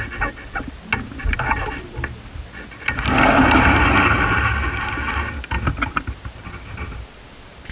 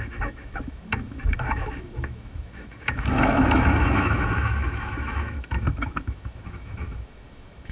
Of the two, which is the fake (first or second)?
second